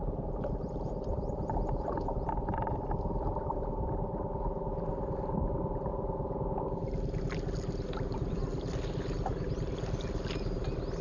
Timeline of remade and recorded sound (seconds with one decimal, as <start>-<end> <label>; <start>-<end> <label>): 0.0-11.0 recorded